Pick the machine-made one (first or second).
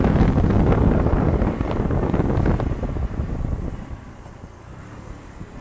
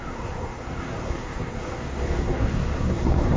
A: second